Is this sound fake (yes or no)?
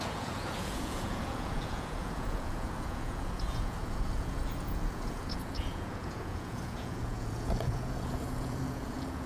yes